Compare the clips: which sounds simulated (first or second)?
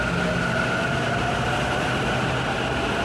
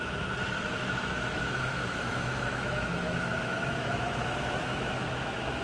second